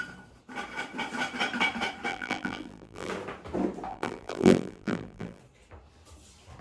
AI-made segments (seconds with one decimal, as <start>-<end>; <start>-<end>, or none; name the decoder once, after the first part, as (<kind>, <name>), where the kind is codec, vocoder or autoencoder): 2.1-3.1 (vocoder, BigVGAN v2); 3.9-5.4